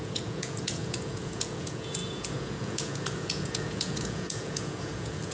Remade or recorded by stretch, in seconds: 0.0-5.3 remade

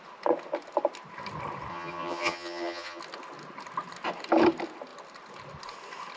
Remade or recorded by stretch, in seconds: 0.0-1.7 recorded; 1.7-3.0 remade; 3.0-6.2 recorded

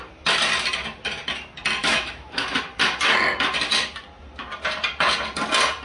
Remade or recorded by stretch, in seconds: 0.0-1.8 recorded; 1.8-2.6 remade; 2.6-5.8 recorded

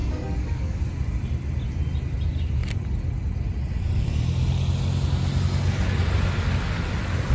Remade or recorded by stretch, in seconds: 0.0-0.8 remade; 0.8-7.3 recorded